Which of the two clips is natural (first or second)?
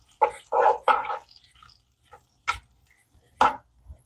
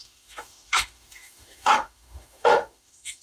first